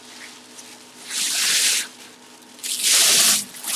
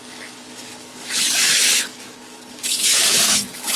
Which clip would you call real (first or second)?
first